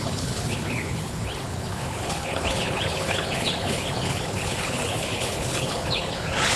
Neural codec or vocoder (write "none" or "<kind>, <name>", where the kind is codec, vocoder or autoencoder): codec, HILCodec